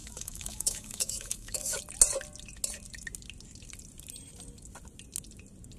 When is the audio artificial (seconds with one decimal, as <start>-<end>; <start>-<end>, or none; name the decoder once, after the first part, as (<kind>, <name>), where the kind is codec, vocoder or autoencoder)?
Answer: 0.0-1.8 (autoencoder, DAC-VAE)